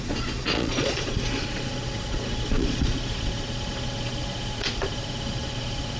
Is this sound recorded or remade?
remade